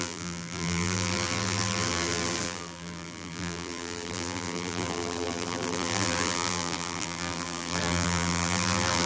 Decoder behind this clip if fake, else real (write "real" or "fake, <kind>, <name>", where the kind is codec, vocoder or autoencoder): fake, vocoder, BigVGAN v2